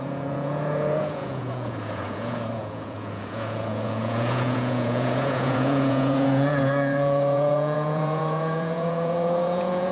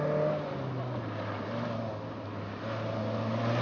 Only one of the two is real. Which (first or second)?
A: second